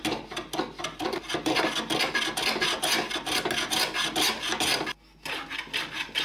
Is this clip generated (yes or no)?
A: no